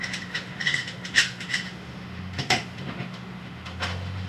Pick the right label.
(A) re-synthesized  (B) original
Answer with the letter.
A